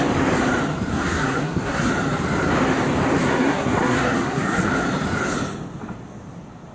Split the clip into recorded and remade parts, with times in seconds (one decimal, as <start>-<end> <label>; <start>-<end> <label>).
0.0-0.9 recorded; 0.9-1.9 remade; 1.9-3.2 recorded; 3.2-4.7 remade; 4.7-6.7 recorded